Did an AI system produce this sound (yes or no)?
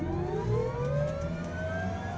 no